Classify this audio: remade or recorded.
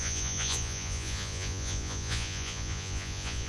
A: remade